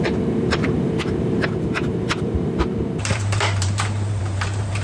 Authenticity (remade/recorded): remade